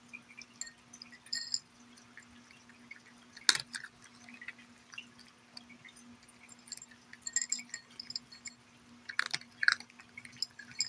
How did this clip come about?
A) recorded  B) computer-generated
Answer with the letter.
A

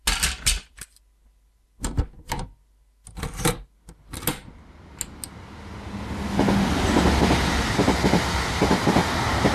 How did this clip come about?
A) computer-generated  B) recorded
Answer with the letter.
B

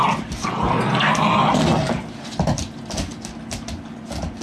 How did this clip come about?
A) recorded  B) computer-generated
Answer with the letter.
A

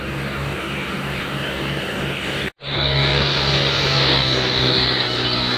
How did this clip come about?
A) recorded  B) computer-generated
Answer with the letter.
B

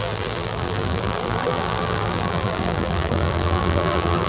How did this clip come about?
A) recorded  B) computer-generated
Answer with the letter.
B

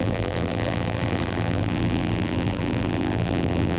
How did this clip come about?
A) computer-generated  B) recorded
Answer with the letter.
A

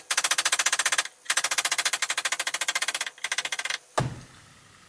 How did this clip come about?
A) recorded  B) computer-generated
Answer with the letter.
A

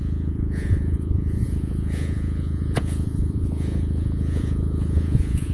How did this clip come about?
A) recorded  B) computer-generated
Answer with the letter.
B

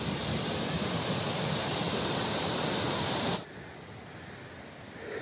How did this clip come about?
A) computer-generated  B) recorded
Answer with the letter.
B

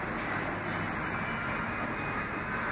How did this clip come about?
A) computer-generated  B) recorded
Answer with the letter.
B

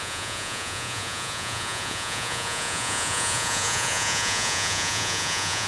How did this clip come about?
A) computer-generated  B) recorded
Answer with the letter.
A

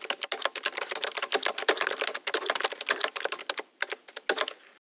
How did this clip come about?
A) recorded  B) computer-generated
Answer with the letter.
A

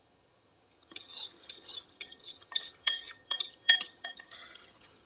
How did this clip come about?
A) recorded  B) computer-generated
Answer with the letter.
B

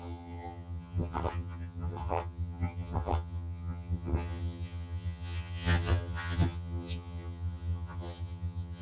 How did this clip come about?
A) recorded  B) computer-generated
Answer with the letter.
B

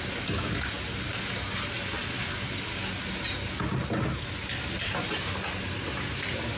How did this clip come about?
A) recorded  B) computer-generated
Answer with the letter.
A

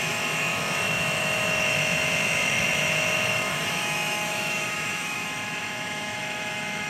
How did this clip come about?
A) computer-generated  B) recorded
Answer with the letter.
A